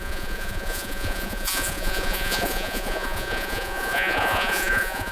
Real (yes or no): no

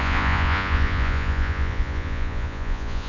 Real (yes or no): no